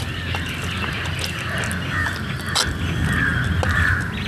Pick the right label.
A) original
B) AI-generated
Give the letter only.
A